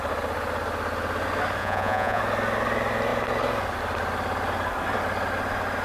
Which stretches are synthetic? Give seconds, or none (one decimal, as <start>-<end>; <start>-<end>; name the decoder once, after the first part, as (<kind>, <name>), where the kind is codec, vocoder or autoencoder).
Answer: 1.6-2.2 (vocoder, Vocos)